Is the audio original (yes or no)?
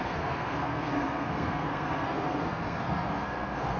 no